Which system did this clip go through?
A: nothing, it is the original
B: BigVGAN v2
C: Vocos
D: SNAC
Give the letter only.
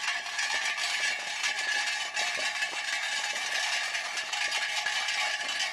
A